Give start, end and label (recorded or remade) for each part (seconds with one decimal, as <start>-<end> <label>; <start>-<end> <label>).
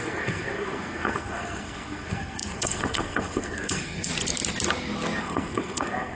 0.0-4.1 remade; 4.1-5.2 recorded; 5.2-6.1 remade